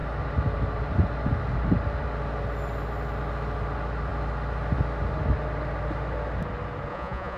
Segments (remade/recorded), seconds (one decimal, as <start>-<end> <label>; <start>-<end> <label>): 0.0-6.9 recorded; 6.9-7.4 remade